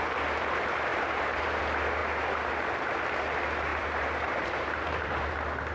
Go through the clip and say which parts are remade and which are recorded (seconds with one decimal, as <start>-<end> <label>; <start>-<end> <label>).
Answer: 0.0-0.9 recorded; 0.9-1.6 remade; 1.6-3.7 recorded; 3.7-5.3 remade; 5.3-5.7 recorded